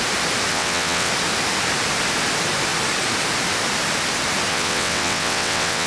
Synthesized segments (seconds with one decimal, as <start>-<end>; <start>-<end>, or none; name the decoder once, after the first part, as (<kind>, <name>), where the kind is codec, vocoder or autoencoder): 0.5-1.1 (vocoder, WaveNeXt); 4.5-5.9